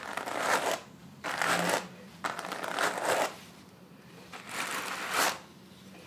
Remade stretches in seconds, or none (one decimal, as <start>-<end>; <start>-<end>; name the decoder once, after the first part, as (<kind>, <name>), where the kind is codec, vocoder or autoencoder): 0.0-6.1 (vocoder, BigVGAN v2)